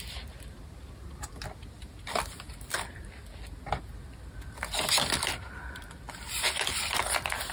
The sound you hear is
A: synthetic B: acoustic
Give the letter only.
B